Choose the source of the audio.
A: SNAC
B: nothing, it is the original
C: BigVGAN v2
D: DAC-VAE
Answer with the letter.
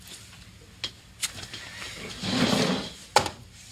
B